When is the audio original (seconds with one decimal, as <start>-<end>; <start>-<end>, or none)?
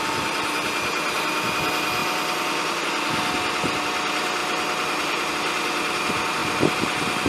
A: 0.0-2.0; 2.8-4.4; 5.3-6.4